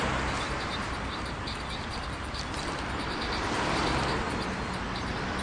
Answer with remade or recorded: recorded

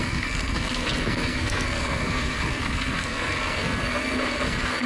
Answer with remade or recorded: remade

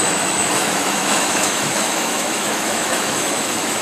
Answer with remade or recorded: remade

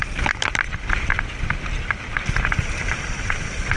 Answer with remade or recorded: remade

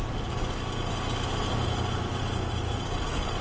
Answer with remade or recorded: recorded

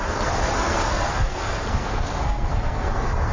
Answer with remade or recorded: remade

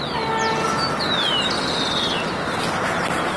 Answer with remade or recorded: recorded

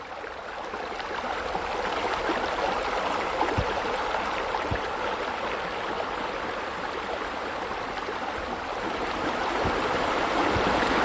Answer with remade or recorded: recorded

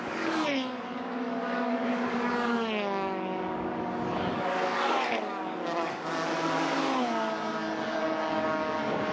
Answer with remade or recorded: remade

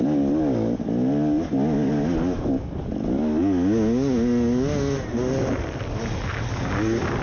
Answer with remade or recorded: recorded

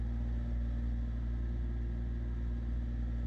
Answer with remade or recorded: recorded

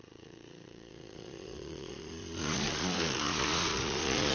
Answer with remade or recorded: remade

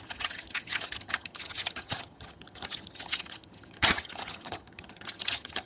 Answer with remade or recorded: remade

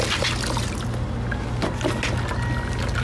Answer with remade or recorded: recorded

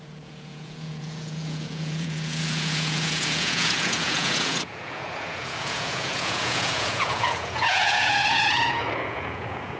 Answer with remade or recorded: remade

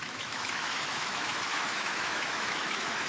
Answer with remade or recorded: remade